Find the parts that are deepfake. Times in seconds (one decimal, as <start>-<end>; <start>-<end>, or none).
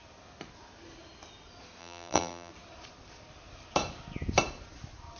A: 1.8-2.5